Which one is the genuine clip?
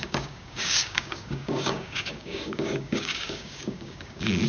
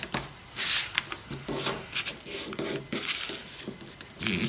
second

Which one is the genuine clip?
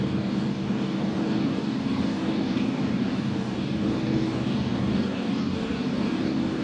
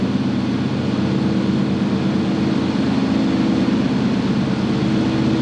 second